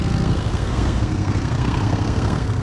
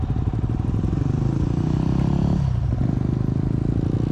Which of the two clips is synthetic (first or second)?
first